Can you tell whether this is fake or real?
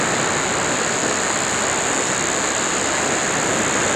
real